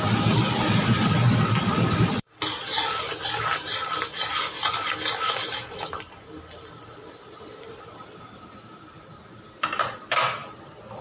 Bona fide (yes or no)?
yes